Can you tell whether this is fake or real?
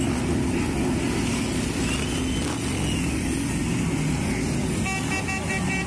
real